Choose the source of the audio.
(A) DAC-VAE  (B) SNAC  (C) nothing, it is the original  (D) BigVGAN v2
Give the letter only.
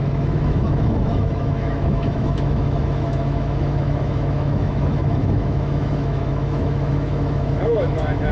A